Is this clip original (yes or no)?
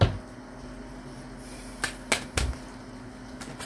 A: yes